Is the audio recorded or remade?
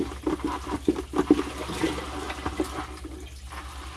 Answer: recorded